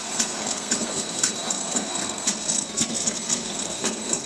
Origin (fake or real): fake